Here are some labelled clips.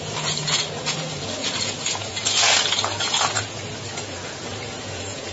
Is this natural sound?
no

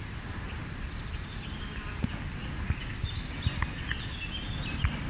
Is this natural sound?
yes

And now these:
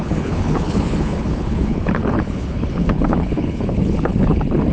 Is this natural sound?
no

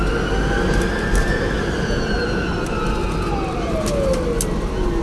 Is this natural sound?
yes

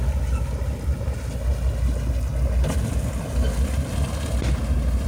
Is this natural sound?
yes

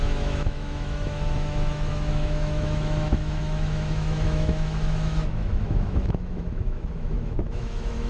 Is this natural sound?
no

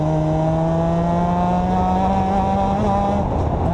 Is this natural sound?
yes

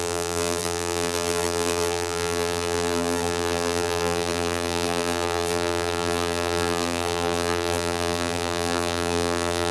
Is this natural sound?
no